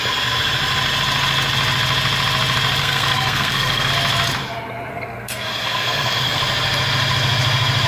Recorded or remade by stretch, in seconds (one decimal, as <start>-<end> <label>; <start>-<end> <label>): 0.0-2.8 recorded; 2.8-3.9 remade; 3.9-4.9 recorded; 4.9-6.4 remade; 6.4-7.9 recorded